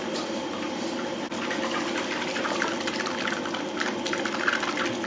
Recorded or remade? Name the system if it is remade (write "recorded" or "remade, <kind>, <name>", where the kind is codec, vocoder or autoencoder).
recorded